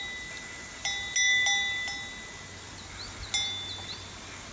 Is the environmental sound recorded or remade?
recorded